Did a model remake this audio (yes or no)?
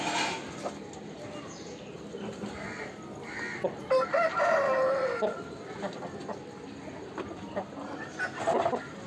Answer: no